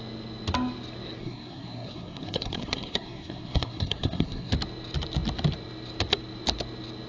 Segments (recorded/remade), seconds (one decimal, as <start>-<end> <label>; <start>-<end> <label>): 0.0-1.2 recorded; 1.2-4.5 remade; 4.5-7.1 recorded